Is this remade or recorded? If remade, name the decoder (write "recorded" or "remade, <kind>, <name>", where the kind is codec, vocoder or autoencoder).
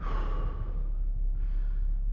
recorded